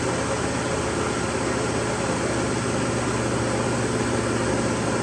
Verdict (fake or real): real